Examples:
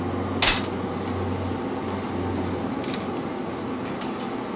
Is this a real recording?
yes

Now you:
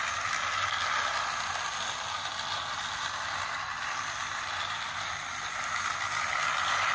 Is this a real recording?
yes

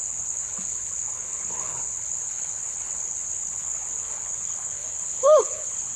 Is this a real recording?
no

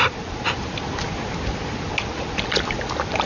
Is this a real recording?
yes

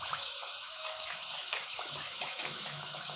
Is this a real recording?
no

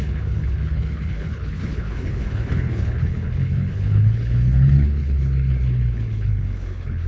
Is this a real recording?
no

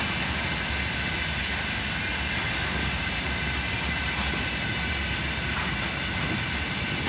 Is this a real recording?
yes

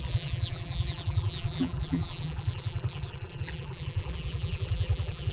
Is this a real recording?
no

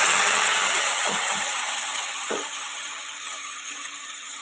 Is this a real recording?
no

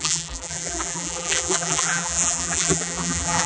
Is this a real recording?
no